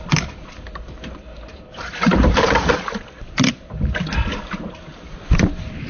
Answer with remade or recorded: remade